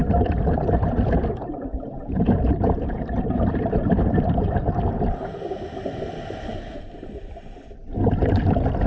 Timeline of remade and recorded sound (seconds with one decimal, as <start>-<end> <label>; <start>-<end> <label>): 0.0-8.9 remade